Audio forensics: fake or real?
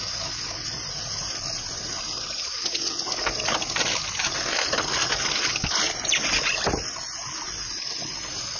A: real